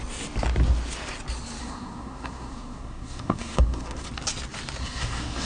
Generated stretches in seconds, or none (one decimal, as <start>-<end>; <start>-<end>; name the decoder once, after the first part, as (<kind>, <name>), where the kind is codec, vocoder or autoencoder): 1.6-4.1 (codec, SNAC); 4.8-5.5